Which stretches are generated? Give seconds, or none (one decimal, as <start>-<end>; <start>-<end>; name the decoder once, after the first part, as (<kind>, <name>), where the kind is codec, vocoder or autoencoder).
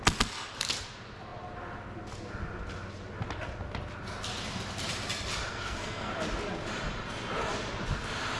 5.5-6.1 (codec, SNAC)